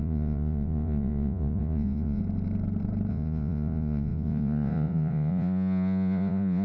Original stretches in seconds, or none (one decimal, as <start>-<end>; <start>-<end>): 2.2-3.1